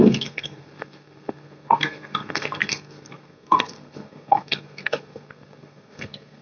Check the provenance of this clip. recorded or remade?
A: remade